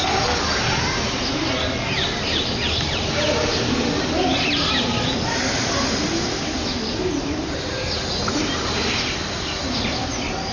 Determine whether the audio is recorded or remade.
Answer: recorded